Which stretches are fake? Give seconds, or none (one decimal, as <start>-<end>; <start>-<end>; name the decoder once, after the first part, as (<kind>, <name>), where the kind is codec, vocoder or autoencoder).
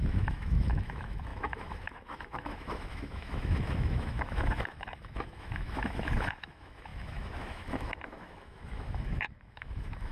0.0-10.1 (autoencoder, DAC-VAE)